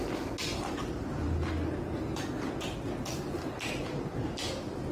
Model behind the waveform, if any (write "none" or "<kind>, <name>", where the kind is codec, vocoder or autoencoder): none